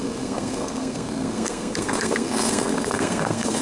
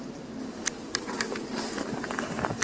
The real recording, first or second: second